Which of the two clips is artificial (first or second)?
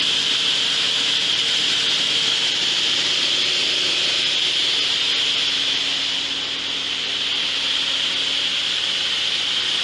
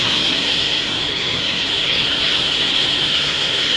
second